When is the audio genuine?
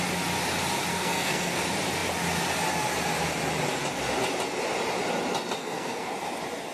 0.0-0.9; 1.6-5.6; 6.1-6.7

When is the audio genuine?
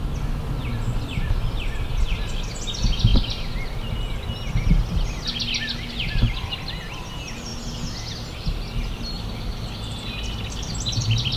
0.0-11.4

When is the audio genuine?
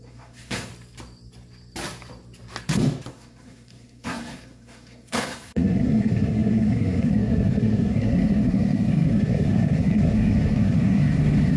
0.7-3.1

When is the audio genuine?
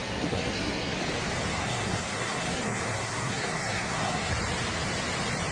1.0-1.5; 4.3-5.5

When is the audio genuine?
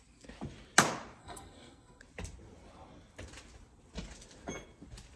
0.0-1.2; 2.0-5.2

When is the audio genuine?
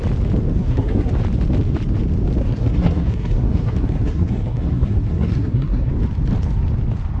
0.0-0.5; 1.1-2.4; 5.9-7.2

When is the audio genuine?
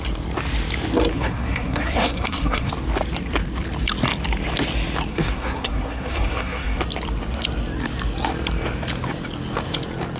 0.0-1.1; 2.7-5.1; 6.8-10.2